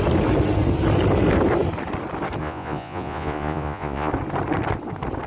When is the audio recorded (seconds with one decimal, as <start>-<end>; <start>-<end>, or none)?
0.0-2.4; 4.1-5.3